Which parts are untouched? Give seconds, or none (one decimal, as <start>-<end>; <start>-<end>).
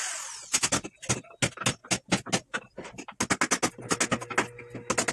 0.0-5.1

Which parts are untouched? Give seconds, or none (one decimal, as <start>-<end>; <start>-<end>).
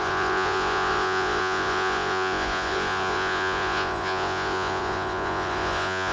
none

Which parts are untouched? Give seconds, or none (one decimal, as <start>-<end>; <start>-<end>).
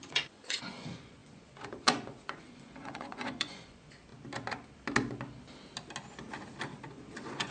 4.1-6.9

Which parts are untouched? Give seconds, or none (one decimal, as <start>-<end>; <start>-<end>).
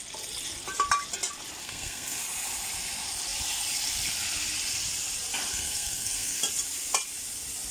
0.0-1.6; 2.2-5.5; 6.4-7.7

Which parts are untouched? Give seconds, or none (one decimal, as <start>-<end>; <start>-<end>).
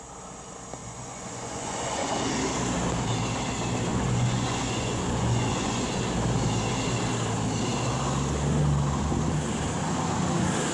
0.0-0.8; 2.2-3.9; 6.0-10.7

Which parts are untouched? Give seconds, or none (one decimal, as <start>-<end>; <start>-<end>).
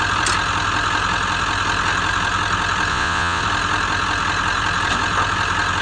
0.0-2.9; 3.4-5.8